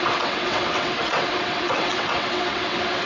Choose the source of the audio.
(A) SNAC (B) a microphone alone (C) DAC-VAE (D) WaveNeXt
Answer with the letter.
D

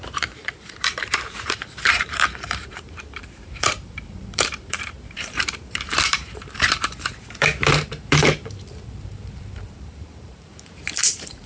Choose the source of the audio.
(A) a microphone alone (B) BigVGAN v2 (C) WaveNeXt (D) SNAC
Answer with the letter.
B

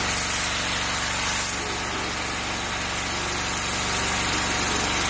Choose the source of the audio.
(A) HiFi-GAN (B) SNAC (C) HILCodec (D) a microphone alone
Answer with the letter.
D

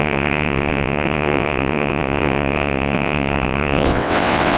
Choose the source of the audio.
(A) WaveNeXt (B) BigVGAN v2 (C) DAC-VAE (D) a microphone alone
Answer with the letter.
A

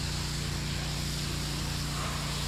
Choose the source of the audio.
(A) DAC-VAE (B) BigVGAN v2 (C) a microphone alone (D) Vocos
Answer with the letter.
C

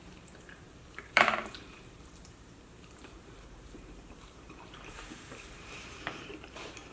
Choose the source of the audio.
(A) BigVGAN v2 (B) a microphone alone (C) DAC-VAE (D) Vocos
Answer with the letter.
A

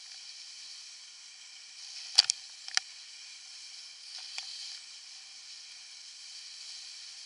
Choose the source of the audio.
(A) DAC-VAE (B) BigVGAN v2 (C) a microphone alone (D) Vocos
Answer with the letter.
C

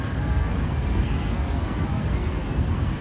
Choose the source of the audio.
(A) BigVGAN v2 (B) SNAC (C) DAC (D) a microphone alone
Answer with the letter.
B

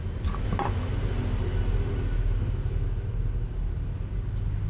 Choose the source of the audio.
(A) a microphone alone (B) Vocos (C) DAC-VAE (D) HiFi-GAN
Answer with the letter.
A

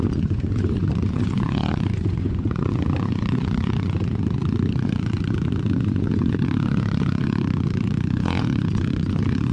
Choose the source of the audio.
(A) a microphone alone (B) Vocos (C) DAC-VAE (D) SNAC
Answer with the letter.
B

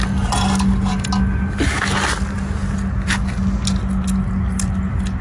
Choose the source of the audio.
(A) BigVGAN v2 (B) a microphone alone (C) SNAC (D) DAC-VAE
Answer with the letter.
B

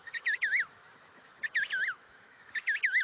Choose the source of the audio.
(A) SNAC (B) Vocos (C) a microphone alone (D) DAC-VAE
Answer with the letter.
D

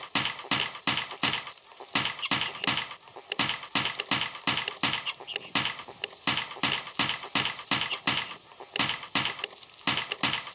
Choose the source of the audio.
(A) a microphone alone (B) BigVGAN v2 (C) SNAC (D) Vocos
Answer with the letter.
A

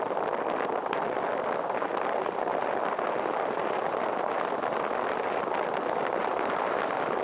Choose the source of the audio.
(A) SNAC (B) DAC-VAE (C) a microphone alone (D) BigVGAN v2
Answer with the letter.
C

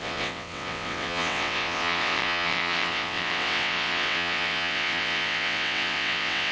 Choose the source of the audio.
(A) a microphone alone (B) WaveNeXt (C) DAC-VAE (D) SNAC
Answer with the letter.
B